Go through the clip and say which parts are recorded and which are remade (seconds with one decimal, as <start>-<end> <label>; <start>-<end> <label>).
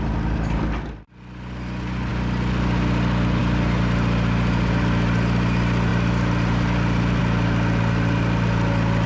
0.0-9.1 recorded